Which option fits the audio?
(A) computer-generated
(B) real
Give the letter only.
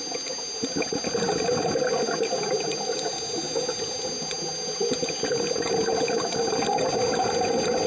B